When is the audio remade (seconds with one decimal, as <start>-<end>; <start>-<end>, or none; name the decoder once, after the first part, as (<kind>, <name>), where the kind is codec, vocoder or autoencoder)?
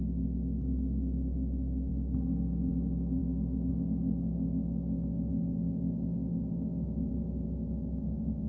none